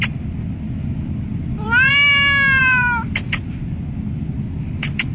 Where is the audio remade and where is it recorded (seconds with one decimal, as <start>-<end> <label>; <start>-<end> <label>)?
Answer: 0.0-0.4 recorded; 0.4-1.9 remade; 1.9-2.6 recorded; 2.6-3.8 remade; 3.8-5.1 recorded